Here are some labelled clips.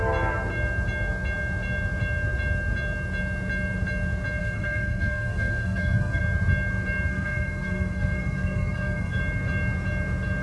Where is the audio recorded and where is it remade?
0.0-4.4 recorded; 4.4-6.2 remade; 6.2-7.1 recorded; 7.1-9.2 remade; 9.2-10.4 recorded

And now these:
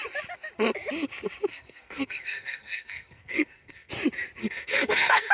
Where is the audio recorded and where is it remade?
0.0-1.5 recorded; 1.5-3.9 remade; 3.9-4.4 recorded; 4.4-5.3 remade